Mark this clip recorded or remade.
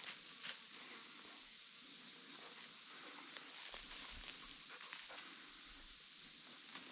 recorded